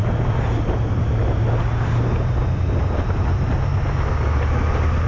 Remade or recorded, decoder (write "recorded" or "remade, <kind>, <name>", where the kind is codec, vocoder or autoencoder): recorded